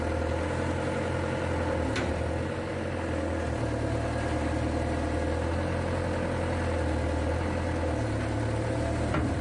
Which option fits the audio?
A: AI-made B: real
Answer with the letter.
B